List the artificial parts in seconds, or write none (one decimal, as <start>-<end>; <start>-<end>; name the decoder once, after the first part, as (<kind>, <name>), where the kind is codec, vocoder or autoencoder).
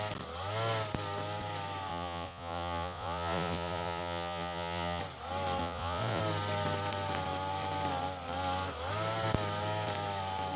1.9-5.0 (vocoder, Vocos); 5.6-6.2